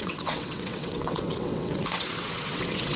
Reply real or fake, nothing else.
fake